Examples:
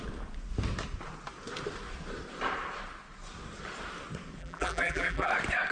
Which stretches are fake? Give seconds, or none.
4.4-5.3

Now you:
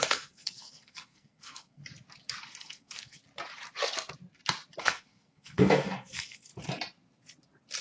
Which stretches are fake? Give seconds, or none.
0.0-1.8; 2.5-3.2; 4.8-6.5

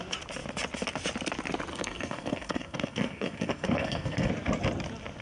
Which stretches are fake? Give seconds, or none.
1.7-4.3

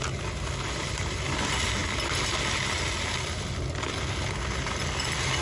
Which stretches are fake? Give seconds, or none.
none